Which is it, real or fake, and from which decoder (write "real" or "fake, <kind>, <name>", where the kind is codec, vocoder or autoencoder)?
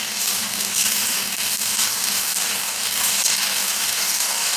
fake, codec, DAC